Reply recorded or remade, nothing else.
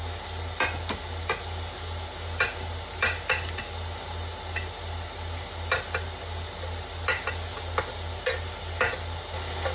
recorded